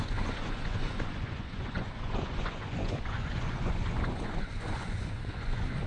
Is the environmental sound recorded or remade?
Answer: remade